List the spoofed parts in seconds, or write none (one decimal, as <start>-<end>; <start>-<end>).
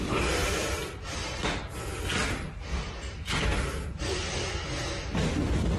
0.0-0.4; 1.7-5.8